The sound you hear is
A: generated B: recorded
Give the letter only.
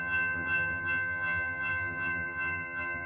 A